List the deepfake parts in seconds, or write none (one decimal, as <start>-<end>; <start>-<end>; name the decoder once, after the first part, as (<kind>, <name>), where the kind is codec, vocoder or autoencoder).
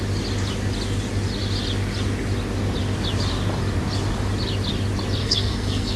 5.2-6.0 (codec, SNAC)